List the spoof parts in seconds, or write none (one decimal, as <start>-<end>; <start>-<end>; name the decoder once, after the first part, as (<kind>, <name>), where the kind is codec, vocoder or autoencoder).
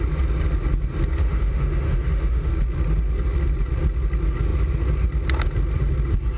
1.2-2.5 (autoencoder, DAC-VAE)